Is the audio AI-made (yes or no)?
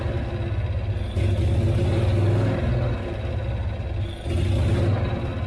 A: no